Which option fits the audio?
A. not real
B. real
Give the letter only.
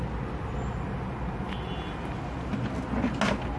B